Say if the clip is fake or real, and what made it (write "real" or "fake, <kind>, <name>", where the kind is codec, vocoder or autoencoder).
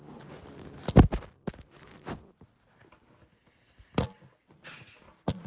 real